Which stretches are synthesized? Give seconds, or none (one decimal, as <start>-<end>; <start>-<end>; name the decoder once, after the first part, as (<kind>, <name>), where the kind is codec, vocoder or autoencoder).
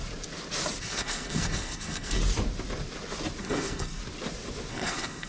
0.8-2.2 (codec, SNAC); 3.4-4.0; 4.7-5.3